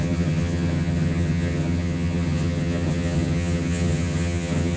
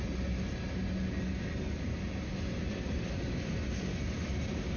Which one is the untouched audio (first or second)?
second